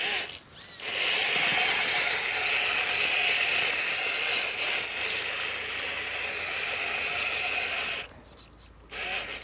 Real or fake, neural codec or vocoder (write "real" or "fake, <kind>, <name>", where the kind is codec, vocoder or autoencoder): real